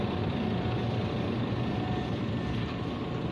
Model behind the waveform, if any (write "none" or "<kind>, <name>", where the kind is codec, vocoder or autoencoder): vocoder, BigVGAN v2